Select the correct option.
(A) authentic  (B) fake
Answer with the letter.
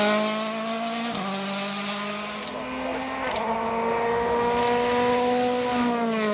A